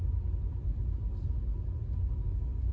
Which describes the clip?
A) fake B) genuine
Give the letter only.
B